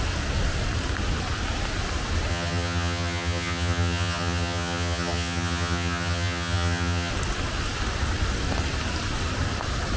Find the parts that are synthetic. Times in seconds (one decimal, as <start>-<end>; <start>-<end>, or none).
2.3-7.1